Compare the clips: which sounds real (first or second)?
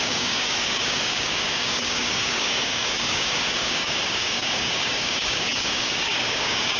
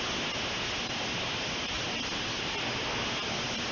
second